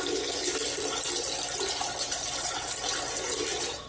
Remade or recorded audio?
recorded